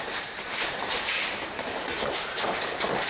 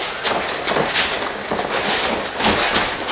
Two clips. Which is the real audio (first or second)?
second